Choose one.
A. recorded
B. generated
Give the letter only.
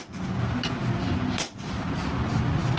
A